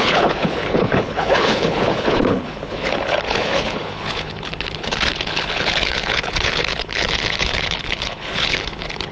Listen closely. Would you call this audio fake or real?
fake